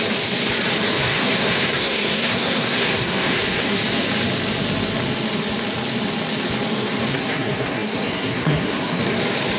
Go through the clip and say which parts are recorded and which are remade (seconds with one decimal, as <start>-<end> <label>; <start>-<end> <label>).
0.0-1.0 recorded; 1.0-3.8 remade; 3.8-7.1 recorded; 7.1-9.0 remade; 9.0-9.6 recorded